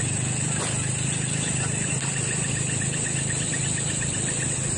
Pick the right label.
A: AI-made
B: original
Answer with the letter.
B